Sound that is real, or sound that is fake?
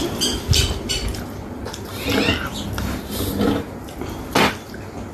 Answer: real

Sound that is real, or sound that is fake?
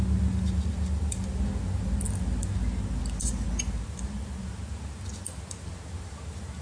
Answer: real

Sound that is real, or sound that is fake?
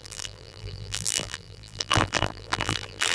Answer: fake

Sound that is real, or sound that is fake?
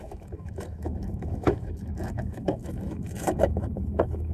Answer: fake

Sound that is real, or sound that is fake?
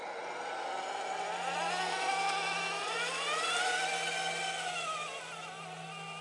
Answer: real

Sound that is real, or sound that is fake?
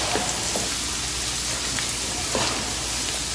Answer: real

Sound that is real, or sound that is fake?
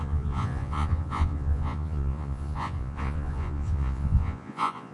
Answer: fake